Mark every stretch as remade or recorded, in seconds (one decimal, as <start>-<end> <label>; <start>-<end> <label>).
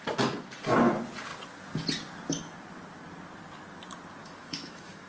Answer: 0.0-4.2 recorded; 4.2-5.1 remade